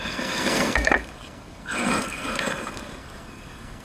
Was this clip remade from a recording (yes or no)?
yes